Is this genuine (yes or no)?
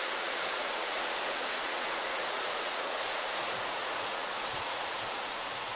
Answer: no